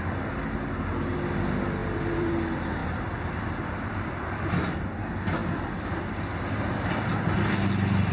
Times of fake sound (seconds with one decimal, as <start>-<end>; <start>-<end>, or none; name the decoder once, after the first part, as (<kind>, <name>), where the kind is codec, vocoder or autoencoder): 1.8-2.3 (vocoder, BigVGAN v2)